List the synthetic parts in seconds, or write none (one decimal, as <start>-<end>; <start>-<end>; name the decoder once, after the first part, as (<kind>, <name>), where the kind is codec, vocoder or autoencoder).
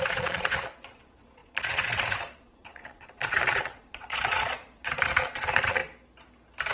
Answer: 0.0-5.8 (vocoder, Vocos)